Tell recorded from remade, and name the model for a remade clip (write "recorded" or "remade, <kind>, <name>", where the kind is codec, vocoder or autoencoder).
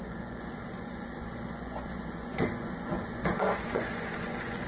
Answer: remade, vocoder, Vocos